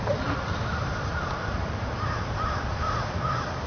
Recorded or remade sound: remade